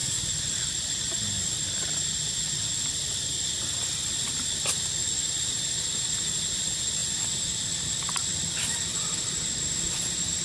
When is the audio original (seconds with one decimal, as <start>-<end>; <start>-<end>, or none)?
0.0-10.4